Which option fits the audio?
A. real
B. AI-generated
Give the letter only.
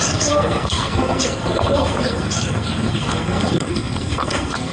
B